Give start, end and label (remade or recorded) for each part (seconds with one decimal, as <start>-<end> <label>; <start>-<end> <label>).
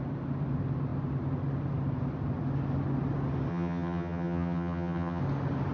0.0-3.5 recorded; 3.5-5.2 remade; 5.2-5.7 recorded